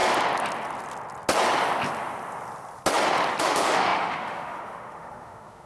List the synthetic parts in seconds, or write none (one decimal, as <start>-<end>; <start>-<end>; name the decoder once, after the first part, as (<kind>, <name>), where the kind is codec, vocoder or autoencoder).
3.4-5.7 (autoencoder, DAC-VAE)